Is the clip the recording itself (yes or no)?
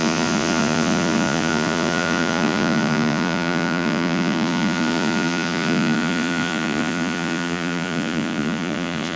no